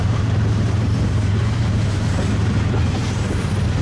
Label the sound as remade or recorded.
remade